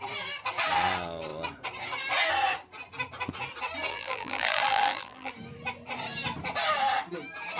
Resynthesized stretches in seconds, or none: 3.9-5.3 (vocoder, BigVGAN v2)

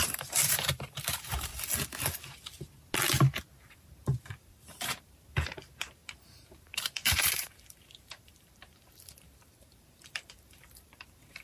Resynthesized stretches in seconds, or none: 0.0-1.5 (vocoder, BigVGAN v2); 3.5-11.4

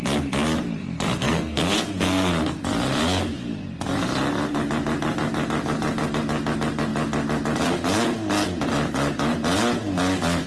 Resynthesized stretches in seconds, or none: 1.2-2.3 (codec, SNAC)

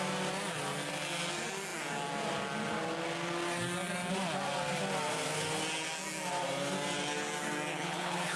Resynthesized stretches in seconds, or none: 7.7-8.4 (codec, HILCodec)

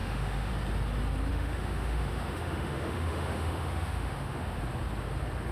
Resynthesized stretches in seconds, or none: 0.0-0.5 (autoencoder, DAC-VAE); 1.3-4.6